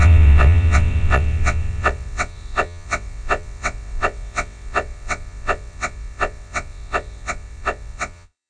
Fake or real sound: fake